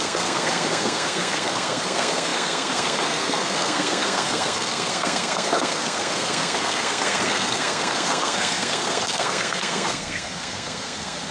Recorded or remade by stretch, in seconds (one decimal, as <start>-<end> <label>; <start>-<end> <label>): 0.0-11.3 remade